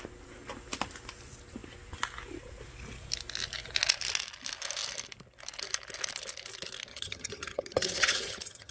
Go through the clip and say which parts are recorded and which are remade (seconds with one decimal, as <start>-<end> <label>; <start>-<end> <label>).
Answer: 0.0-6.9 recorded; 6.9-8.7 remade